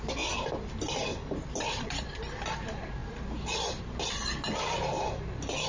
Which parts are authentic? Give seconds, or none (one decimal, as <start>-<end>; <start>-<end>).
0.0-1.1; 2.2-3.0; 3.8-5.7